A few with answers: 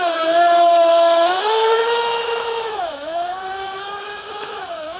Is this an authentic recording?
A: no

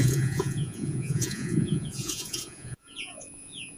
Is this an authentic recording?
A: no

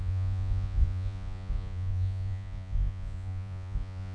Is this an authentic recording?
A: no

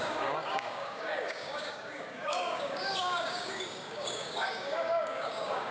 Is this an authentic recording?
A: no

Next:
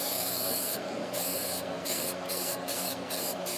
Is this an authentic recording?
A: no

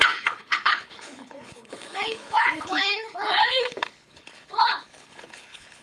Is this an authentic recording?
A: no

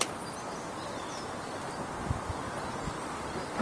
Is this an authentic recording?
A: yes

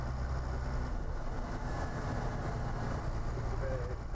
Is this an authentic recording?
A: yes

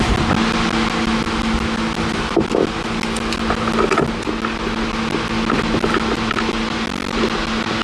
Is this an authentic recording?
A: yes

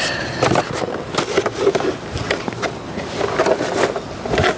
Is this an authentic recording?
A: yes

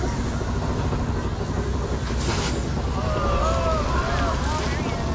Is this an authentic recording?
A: yes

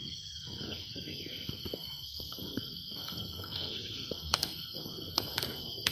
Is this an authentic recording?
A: no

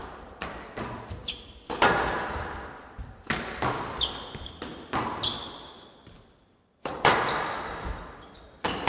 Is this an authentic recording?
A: yes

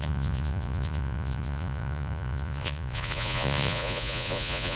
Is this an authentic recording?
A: no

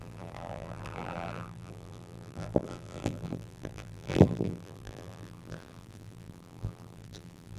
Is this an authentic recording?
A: no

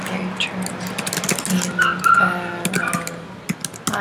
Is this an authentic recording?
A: yes